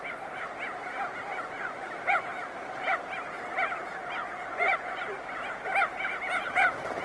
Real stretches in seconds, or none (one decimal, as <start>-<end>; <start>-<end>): 0.0-1.3; 1.9-4.2; 5.0-7.0